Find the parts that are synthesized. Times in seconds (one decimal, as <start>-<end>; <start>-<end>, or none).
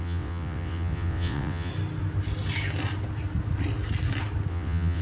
0.0-1.7; 4.5-5.0